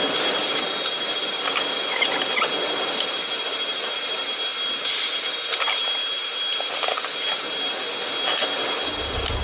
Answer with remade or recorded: recorded